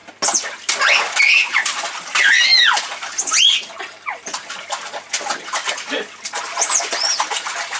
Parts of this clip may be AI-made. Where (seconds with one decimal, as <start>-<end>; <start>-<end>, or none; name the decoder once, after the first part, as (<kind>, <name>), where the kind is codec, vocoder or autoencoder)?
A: 1.2-2.5 (vocoder, BigVGAN v2); 5.4-7.8